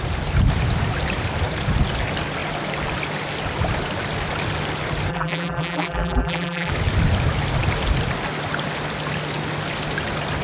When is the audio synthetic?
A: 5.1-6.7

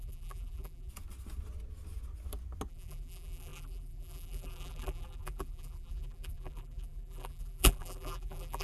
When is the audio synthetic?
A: 0.0-0.9; 2.7-8.6

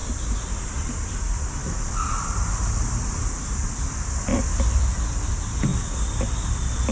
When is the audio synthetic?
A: 0.0-1.1; 5.7-6.5